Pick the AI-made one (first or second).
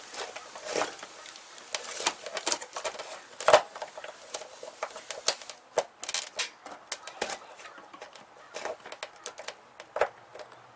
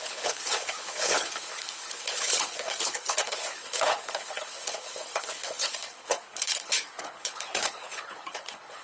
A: second